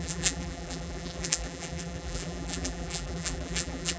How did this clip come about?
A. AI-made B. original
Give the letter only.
A